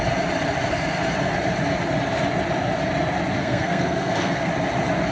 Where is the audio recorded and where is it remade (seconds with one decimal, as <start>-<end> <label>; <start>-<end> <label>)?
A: 0.0-3.4 recorded; 3.4-4.5 remade; 4.5-5.1 recorded